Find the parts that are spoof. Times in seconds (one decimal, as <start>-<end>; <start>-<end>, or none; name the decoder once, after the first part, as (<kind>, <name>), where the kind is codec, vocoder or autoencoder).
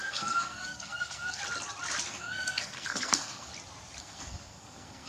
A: 0.0-1.4 (codec, SNAC); 2.1-3.5; 4.0-5.1